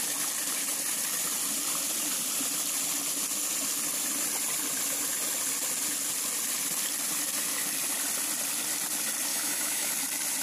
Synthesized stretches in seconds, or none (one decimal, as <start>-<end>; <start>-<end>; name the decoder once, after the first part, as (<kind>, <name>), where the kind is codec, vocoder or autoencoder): 9.3-9.9 (autoencoder, DAC-VAE)